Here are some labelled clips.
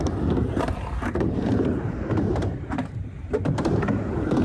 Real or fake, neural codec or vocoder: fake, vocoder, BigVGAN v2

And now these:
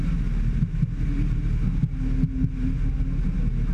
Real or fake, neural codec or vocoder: real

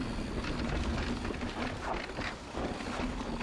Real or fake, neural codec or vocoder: real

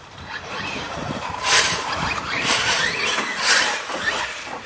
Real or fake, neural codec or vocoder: fake, vocoder, BigVGAN v2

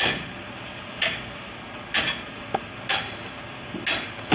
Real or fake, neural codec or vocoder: real